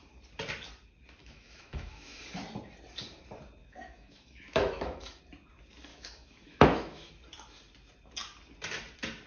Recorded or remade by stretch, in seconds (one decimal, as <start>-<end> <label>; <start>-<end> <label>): 0.0-1.2 recorded; 1.2-2.2 remade; 2.2-3.6 recorded; 3.6-5.2 remade; 5.2-5.9 recorded; 5.9-7.1 remade; 7.1-9.3 recorded